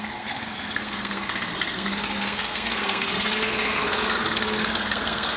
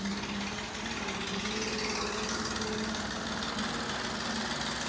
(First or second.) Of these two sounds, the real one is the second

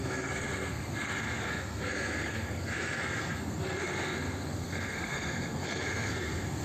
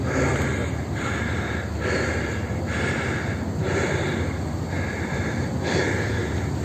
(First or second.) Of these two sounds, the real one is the second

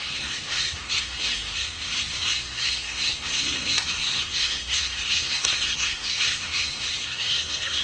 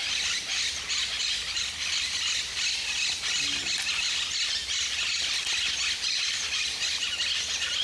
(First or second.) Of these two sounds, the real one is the second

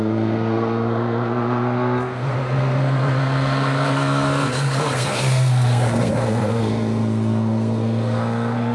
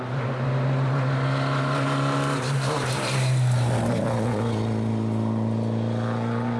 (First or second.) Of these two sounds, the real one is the second